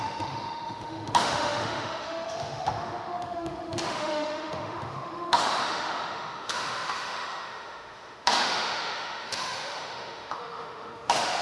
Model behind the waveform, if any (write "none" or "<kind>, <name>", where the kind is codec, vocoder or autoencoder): autoencoder, DAC-VAE